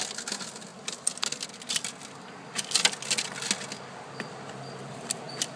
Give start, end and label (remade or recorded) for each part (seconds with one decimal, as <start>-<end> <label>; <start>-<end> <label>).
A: 0.0-5.6 recorded